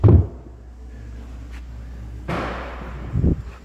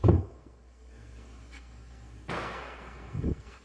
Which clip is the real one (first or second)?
first